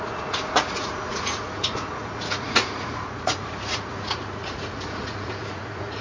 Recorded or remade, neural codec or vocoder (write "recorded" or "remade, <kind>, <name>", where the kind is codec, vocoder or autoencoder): remade, vocoder, Vocos